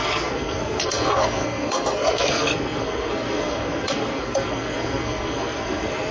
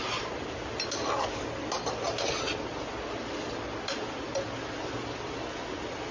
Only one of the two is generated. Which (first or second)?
first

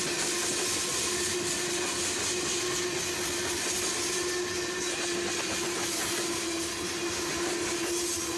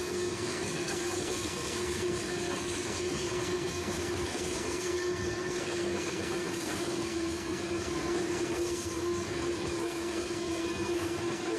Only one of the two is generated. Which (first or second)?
second